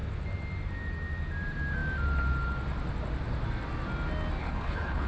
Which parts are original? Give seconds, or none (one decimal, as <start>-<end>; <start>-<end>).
0.0-4.4